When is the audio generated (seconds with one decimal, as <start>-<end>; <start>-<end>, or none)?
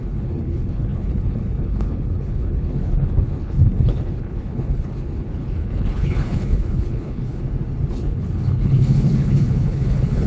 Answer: 0.0-7.4; 7.9-10.3